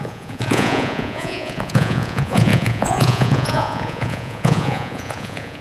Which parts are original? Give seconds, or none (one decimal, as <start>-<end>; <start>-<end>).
none